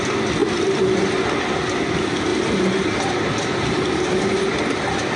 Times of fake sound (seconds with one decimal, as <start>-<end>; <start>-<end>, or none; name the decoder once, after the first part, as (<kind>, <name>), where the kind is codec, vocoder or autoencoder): 2.3-4.5 (vocoder, BigVGAN v2)